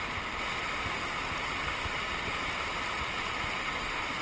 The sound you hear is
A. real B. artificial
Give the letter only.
A